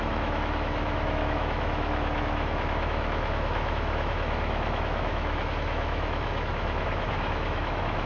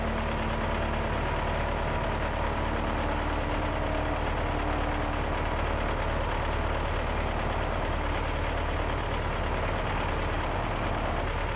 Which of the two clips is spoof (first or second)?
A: first